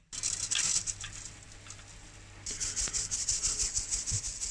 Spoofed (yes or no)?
no